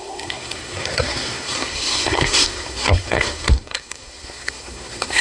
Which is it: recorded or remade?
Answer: remade